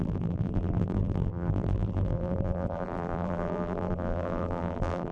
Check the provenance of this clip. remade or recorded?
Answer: remade